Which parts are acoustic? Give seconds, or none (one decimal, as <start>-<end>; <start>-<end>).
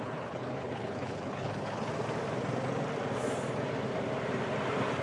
1.9-5.0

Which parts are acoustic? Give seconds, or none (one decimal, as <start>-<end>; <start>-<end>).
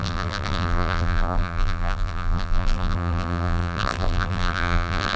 none